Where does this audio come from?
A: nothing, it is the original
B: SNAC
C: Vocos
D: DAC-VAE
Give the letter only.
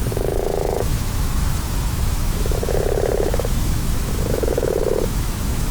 D